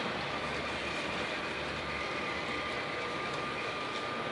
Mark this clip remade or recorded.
remade